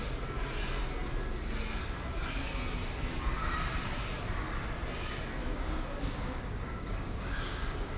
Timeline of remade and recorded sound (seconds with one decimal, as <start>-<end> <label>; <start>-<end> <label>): 0.0-5.4 recorded; 5.4-8.0 remade